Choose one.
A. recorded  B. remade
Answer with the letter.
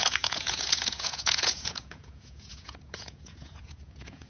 B